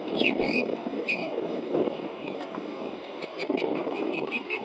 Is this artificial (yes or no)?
yes